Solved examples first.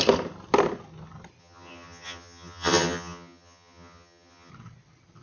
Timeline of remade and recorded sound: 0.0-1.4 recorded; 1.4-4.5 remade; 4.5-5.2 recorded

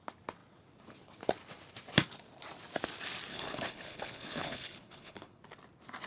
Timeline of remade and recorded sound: 0.0-3.3 recorded; 3.3-5.4 remade; 5.4-6.1 recorded

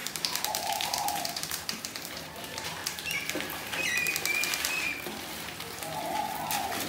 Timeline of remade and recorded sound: 0.0-2.8 remade; 2.8-6.9 recorded

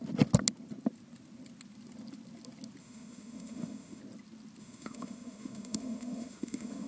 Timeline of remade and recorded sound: 0.0-2.8 recorded; 2.8-4.0 remade; 4.0-4.6 recorded; 4.6-6.9 remade

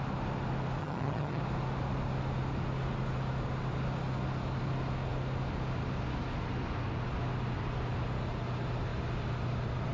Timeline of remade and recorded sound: 0.0-0.8 recorded; 0.8-1.4 remade; 1.4-9.9 recorded

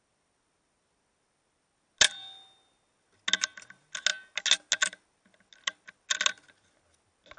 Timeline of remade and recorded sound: 0.0-7.4 recorded

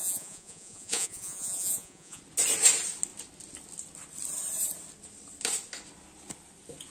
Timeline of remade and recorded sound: 0.0-2.2 remade; 2.2-6.9 recorded